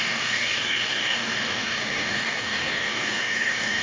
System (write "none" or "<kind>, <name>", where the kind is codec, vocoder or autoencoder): codec, DAC